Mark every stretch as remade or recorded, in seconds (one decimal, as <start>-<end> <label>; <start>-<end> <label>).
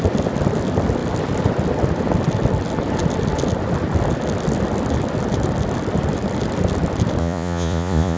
0.0-7.2 recorded; 7.2-8.2 remade